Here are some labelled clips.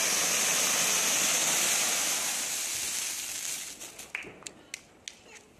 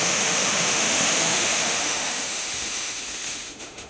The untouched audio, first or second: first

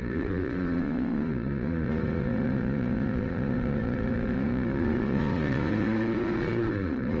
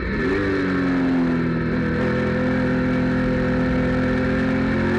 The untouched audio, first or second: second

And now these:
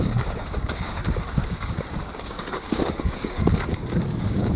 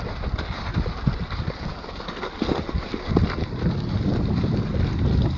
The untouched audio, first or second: second